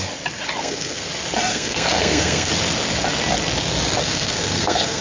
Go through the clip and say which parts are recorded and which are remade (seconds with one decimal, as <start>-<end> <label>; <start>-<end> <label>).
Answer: 0.0-0.6 recorded; 0.6-1.1 remade; 1.1-1.5 recorded; 1.5-2.5 remade; 2.5-4.0 recorded; 4.0-5.0 remade